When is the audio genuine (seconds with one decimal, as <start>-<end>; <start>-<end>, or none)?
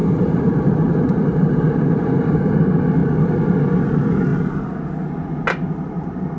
2.4-6.4